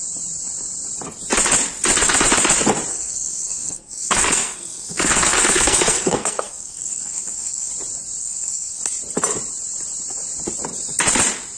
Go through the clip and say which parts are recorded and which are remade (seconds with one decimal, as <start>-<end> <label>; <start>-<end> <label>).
0.0-2.9 recorded; 2.9-7.7 remade; 7.7-8.2 recorded; 8.2-8.8 remade; 8.8-11.6 recorded